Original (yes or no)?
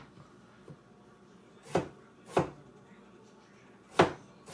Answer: yes